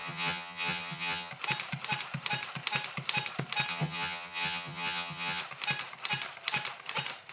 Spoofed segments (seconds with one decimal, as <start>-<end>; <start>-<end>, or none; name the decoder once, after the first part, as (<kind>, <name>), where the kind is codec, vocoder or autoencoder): 0.0-1.3 (vocoder, HiFi-GAN); 3.7-5.4